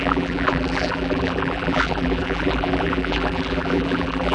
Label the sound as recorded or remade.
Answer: remade